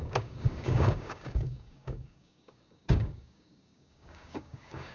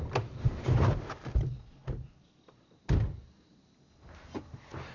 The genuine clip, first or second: second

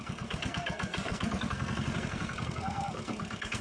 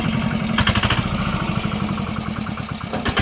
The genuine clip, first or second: second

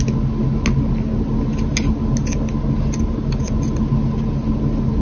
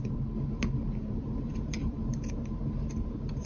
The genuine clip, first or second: first